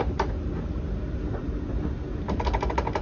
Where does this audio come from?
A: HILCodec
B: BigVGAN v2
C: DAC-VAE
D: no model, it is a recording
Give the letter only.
B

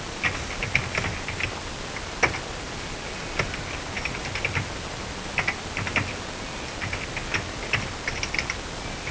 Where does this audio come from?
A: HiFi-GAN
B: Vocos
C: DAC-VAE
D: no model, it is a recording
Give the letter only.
D